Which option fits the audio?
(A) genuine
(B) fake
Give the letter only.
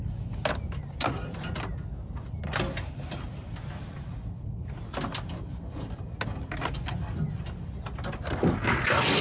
A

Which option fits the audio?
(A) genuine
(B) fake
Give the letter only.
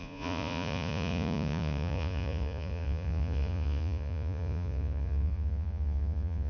B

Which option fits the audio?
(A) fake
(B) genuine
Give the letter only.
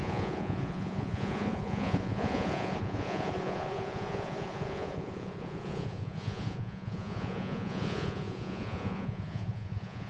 A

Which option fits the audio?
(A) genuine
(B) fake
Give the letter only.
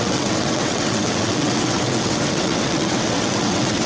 B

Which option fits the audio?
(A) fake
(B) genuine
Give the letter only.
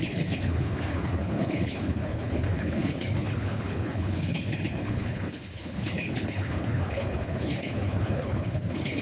A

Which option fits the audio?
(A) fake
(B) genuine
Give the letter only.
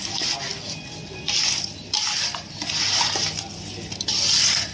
B